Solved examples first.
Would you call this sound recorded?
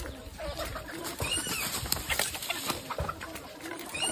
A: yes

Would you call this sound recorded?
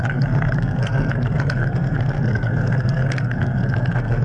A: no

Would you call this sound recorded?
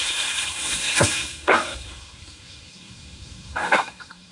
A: no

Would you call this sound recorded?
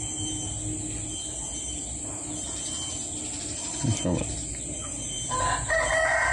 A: yes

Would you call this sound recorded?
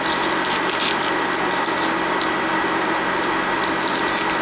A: yes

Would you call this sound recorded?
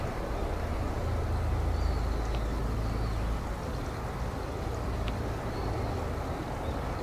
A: yes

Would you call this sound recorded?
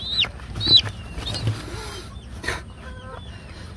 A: yes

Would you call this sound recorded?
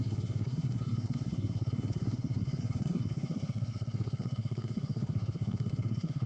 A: no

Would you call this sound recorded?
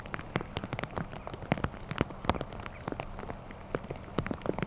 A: yes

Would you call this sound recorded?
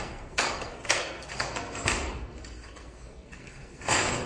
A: no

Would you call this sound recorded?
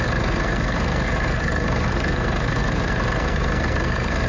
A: no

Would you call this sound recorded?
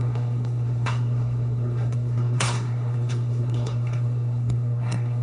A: no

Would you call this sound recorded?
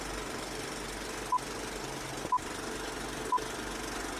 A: yes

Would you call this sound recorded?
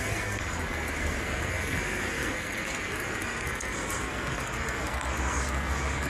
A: no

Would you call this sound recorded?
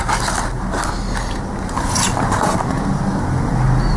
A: yes